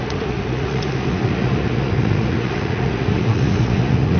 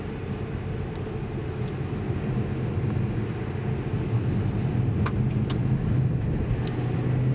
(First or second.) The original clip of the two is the second